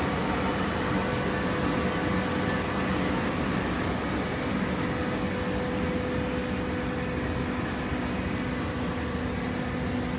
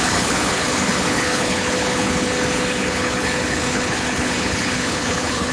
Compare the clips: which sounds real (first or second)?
first